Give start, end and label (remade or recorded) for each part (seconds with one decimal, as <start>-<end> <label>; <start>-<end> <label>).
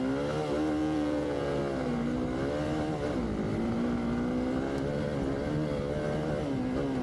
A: 0.0-0.8 recorded; 0.8-1.6 remade; 1.6-7.0 recorded